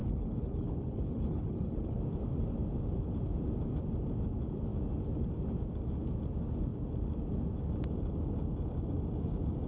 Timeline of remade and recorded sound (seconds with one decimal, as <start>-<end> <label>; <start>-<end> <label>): 0.0-2.0 remade; 2.0-9.7 recorded